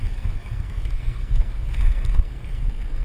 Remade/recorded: remade